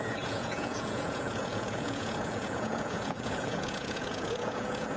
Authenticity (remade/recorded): remade